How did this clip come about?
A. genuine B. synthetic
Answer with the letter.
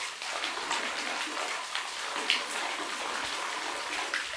A